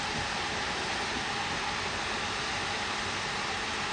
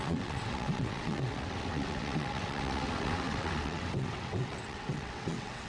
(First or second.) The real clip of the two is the first